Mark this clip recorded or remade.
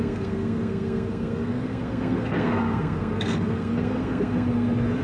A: remade